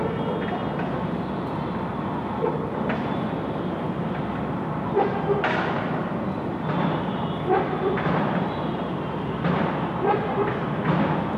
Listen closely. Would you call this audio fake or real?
real